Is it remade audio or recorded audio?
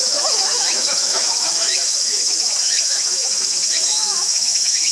remade